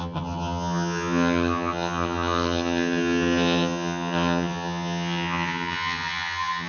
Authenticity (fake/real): fake